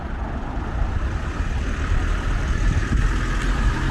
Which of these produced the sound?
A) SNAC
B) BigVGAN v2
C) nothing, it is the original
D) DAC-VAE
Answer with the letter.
C